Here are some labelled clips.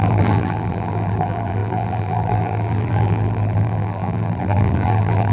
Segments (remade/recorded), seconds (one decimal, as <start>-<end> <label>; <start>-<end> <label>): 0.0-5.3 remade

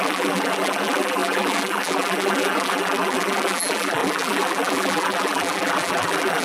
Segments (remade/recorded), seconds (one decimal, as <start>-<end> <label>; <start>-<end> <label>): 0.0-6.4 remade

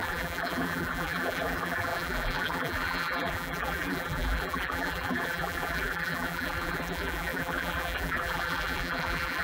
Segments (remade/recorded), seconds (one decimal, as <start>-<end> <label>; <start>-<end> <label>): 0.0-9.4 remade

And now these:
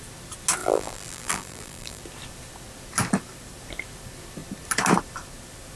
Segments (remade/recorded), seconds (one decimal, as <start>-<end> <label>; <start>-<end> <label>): 0.0-0.6 recorded; 0.6-2.0 remade; 2.0-5.8 recorded

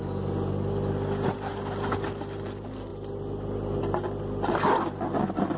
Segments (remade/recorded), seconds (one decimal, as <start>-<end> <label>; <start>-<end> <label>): 0.0-5.6 recorded